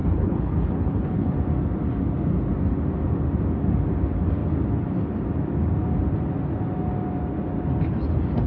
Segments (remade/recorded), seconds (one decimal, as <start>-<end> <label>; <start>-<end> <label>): 0.0-1.4 remade; 1.4-8.5 recorded